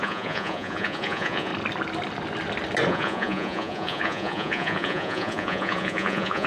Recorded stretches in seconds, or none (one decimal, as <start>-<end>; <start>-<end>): 1.5-2.9